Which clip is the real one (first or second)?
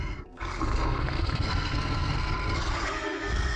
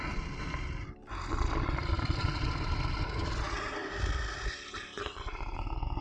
second